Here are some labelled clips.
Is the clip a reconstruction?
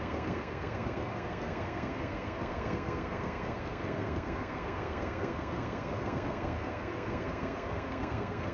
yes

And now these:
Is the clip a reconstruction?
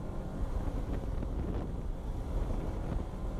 no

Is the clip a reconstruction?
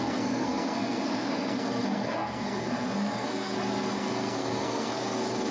yes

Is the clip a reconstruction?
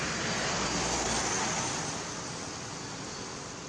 no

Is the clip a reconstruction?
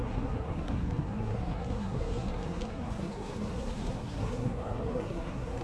yes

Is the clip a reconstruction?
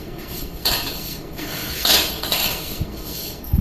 yes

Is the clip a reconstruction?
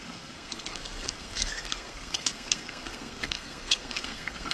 yes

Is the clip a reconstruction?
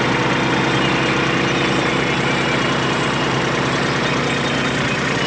no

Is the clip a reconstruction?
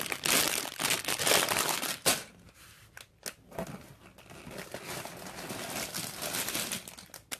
no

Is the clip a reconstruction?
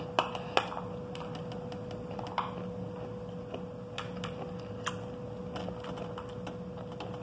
no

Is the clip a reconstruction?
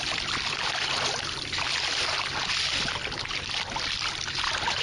no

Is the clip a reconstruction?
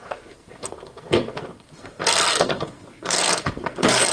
yes